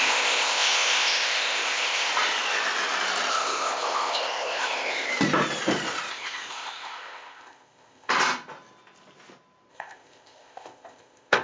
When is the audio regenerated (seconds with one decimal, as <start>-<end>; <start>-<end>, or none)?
0.0-2.1; 3.3-5.1; 6.1-8.1; 9.7-11.4